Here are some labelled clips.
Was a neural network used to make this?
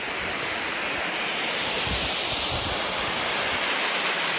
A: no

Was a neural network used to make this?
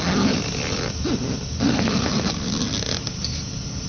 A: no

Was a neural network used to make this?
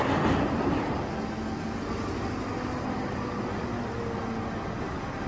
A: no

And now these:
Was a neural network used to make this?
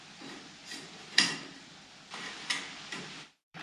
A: yes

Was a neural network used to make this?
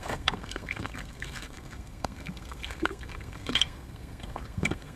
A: yes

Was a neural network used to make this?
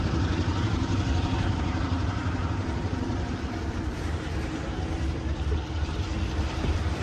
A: yes